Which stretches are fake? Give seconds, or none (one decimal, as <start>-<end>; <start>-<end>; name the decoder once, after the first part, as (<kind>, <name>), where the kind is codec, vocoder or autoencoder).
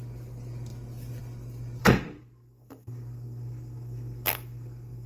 1.8-5.1 (codec, SNAC)